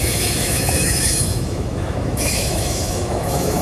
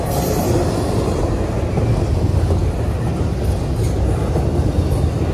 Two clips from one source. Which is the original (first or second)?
second